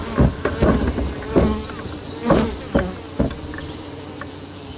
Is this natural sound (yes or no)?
yes